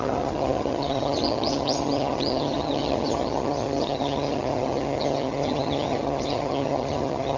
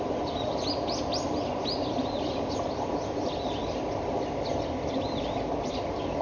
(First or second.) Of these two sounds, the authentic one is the second